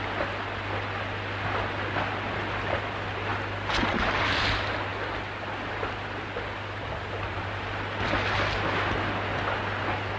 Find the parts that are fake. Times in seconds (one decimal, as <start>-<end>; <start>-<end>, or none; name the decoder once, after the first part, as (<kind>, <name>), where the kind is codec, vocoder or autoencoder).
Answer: none